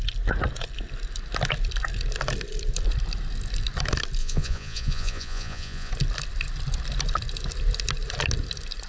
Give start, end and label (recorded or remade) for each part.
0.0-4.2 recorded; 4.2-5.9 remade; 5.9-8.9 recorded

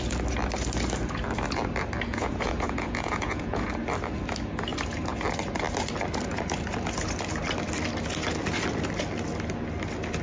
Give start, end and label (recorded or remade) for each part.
0.0-2.1 recorded; 2.1-3.7 remade; 3.7-10.2 recorded

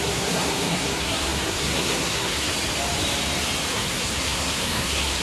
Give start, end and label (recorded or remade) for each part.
0.0-2.5 remade; 2.5-3.7 recorded; 3.7-5.2 remade

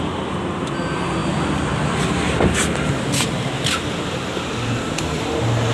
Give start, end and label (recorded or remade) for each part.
0.0-5.7 recorded

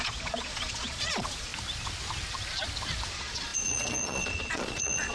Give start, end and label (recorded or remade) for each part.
0.0-1.5 remade; 1.5-3.1 recorded; 3.1-5.1 remade

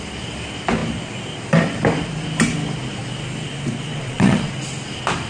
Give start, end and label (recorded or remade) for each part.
0.0-3.9 recorded; 3.9-4.5 remade; 4.5-5.3 recorded

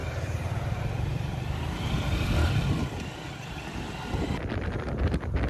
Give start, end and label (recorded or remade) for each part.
0.0-2.5 remade; 2.5-5.5 recorded

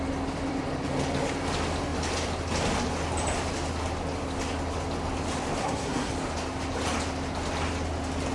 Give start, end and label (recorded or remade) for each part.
0.0-5.6 recorded; 5.6-6.1 remade; 6.1-8.3 recorded